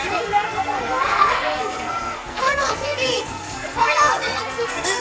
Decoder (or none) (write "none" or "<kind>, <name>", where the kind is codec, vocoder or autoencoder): codec, SNAC